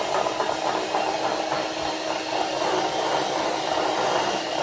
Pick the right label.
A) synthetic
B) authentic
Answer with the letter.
B